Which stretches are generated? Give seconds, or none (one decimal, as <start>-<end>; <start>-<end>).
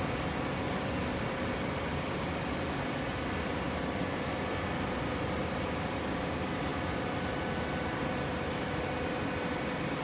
none